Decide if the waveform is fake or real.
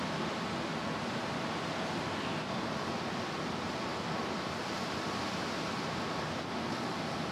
real